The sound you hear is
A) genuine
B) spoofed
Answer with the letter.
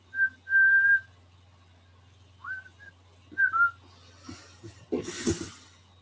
A